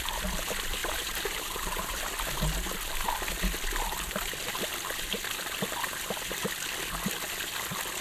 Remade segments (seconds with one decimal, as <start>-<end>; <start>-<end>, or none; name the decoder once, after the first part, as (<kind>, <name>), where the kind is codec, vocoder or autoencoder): 0.8-2.0 (vocoder, BigVGAN v2)

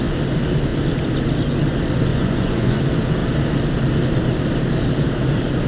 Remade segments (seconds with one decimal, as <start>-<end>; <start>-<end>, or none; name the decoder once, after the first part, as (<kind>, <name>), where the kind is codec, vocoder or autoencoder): 2.1-2.8 (vocoder, Vocos)

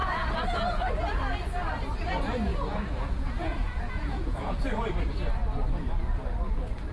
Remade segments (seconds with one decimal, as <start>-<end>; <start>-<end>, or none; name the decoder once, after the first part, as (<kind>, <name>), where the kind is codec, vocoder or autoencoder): 0.0-0.9 (vocoder, Vocos); 2.5-4.9

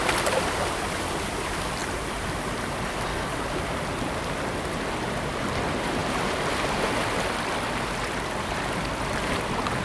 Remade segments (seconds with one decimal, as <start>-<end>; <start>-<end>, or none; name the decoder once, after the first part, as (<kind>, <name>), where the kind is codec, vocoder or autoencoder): none